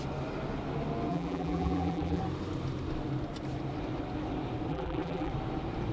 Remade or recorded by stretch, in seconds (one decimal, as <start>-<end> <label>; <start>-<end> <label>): 0.0-1.1 recorded; 1.1-2.2 remade; 2.2-4.7 recorded; 4.7-5.3 remade; 5.3-5.9 recorded